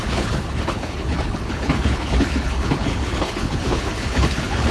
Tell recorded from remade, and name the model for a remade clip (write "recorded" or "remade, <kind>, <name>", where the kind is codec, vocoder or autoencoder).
remade, codec, HILCodec